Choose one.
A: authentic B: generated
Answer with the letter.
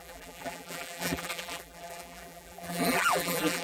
B